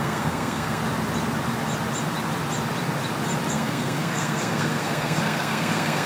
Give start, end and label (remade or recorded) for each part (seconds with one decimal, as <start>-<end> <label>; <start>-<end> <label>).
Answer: 0.0-0.8 remade; 0.8-3.5 recorded; 3.5-6.1 remade